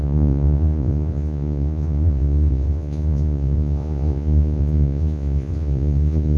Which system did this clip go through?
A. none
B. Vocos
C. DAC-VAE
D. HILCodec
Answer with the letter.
B